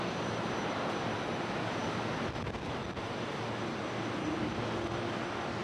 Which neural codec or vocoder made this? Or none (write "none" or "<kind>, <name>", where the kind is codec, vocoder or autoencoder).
none